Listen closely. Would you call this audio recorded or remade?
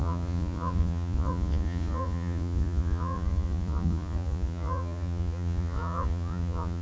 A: remade